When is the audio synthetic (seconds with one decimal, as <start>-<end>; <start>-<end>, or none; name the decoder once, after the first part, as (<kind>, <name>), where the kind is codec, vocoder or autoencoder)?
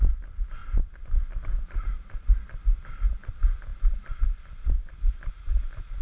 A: 3.7-4.2 (vocoder, BigVGAN v2)